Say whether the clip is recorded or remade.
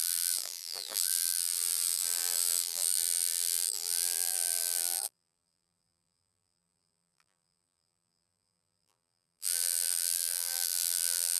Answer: remade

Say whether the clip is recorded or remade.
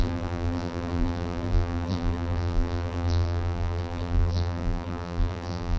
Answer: remade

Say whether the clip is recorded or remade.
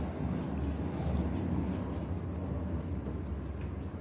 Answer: recorded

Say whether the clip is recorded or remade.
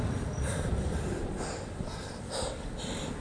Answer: remade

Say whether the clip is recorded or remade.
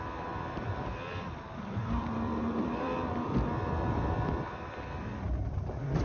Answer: remade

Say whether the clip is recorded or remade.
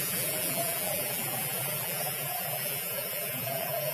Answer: remade